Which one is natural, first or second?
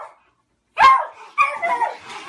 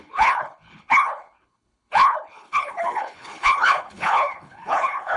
first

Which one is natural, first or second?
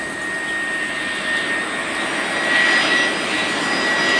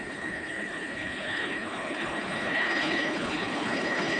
first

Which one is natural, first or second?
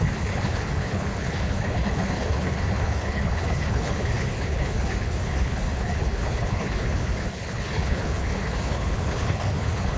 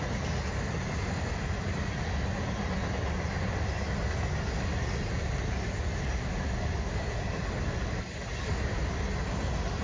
second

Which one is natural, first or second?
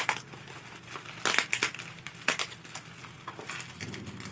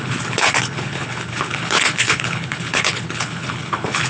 first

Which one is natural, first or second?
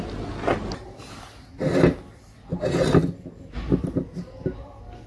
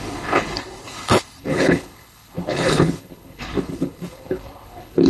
first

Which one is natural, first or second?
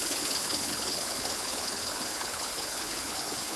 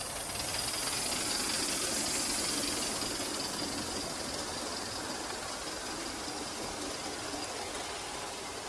second